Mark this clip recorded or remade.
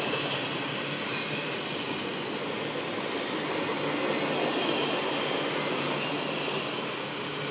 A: recorded